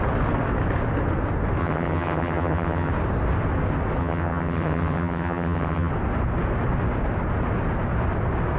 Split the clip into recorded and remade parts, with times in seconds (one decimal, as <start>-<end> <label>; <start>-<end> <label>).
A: 0.0-1.6 recorded; 1.6-2.9 remade; 2.9-4.0 recorded; 4.0-5.9 remade; 5.9-8.6 recorded